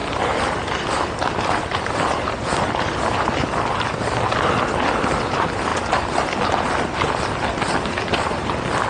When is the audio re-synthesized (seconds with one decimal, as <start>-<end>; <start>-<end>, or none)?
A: none